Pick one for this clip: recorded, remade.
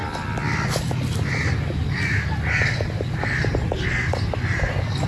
recorded